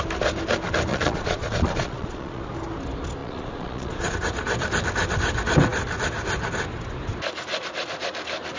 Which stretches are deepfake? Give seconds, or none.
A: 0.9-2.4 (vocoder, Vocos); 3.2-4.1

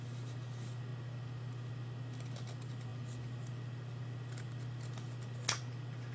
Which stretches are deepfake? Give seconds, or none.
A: none

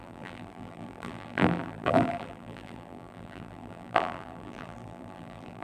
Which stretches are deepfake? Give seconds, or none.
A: 0.0-5.6 (vocoder, BigVGAN v2)

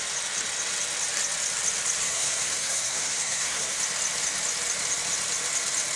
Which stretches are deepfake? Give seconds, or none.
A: 2.0-3.8 (codec, SNAC)

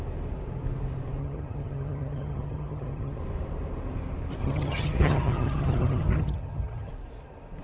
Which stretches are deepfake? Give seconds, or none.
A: 1.2-3.2 (vocoder, HiFi-GAN); 4.4-6.9

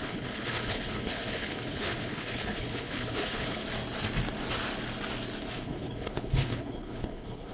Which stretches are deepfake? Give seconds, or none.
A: 0.0-3.6 (codec, HILCodec); 5.5-7.5

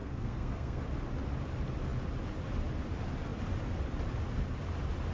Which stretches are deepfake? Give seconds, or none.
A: 0.0-0.8 (codec, SNAC)

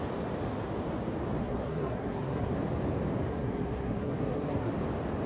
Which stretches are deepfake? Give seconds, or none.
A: 1.4-2.6 (codec, SNAC); 3.3-4.7